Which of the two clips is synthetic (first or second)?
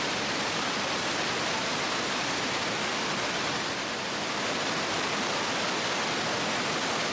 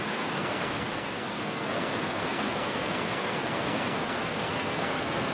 second